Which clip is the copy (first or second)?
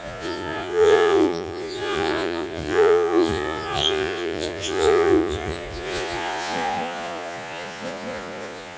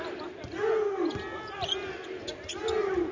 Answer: first